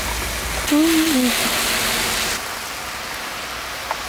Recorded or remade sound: recorded